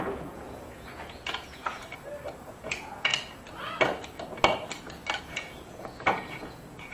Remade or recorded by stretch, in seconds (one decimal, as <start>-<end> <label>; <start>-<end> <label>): 0.0-1.8 remade; 1.8-2.5 recorded; 2.5-3.1 remade; 3.1-5.2 recorded; 5.2-6.9 remade

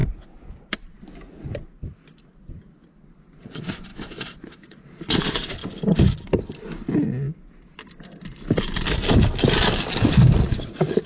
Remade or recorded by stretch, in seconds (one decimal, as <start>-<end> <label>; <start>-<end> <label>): 0.0-3.4 recorded; 3.4-5.6 remade; 5.6-10.4 recorded; 10.4-11.1 remade

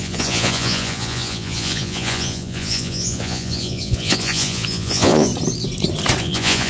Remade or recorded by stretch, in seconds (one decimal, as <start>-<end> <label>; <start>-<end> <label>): 0.0-5.3 remade; 5.3-6.2 recorded; 6.2-6.7 remade

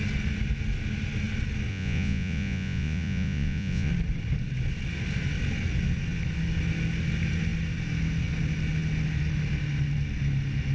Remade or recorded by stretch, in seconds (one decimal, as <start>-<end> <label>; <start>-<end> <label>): 0.0-1.7 recorded; 1.7-3.9 remade; 3.9-10.7 recorded

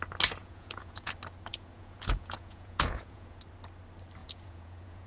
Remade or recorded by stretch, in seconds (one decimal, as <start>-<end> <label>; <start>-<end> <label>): 0.0-0.4 recorded; 0.4-1.1 remade; 1.1-1.5 recorded; 1.5-3.4 remade; 3.4-4.2 recorded; 4.2-5.1 remade